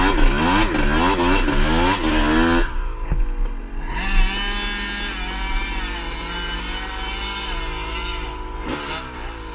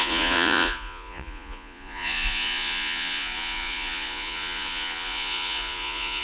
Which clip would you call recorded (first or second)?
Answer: first